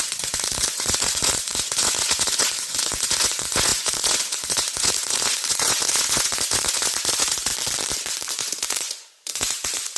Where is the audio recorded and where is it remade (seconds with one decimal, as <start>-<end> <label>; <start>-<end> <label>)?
0.0-7.5 remade; 7.5-8.3 recorded; 8.3-10.0 remade